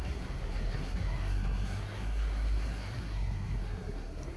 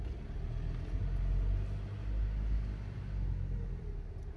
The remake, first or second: first